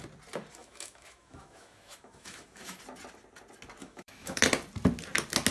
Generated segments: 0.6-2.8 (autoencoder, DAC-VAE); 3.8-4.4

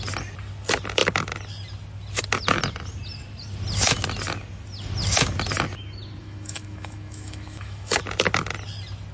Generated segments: 6.2-8.0 (autoencoder, DAC-VAE)

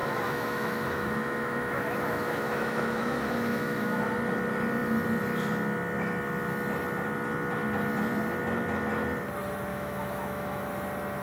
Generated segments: 0.0-4.0 (autoencoder, DAC-VAE); 9.7-10.7

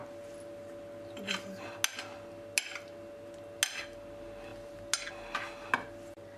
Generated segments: none

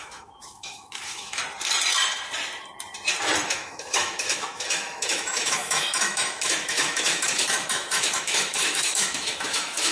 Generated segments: 0.0-1.4 (autoencoder, DAC-VAE); 3.5-9.9

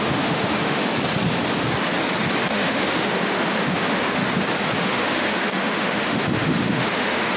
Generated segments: 0.0-0.9 (autoencoder, DAC-VAE); 2.4-4.2; 4.8-7.4

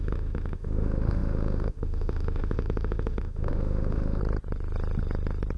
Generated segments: 0.0-4.2 (autoencoder, DAC-VAE)

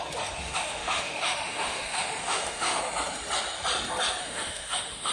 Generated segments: 0.4-2.8 (autoencoder, DAC-VAE); 4.2-5.1